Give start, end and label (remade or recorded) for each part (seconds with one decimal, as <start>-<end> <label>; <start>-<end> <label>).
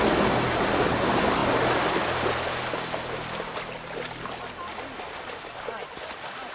0.0-6.5 recorded